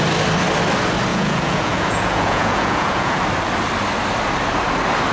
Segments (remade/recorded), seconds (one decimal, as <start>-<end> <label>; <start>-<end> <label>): 0.0-1.1 recorded; 1.1-3.2 remade; 3.2-5.1 recorded